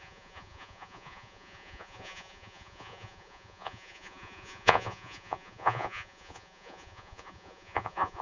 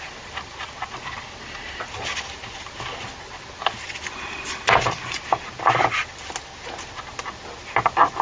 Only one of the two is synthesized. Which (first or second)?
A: first